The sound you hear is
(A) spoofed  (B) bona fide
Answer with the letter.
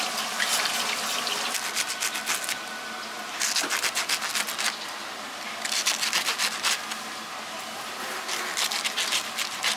B